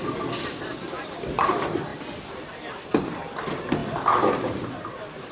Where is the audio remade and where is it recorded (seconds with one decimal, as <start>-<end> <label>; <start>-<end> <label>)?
0.0-5.3 recorded